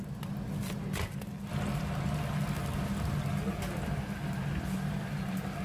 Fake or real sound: real